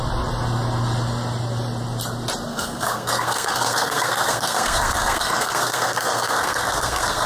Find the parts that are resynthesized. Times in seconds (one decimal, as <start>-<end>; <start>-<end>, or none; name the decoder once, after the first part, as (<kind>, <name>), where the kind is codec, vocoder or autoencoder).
2.5-7.3 (codec, SNAC)